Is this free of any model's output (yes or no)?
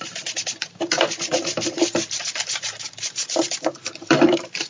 no